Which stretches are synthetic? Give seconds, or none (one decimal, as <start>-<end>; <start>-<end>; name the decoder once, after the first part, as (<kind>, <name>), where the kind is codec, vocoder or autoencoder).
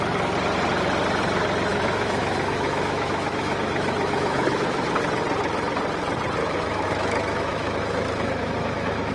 1.7-4.9 (autoencoder, DAC-VAE); 6.4-9.1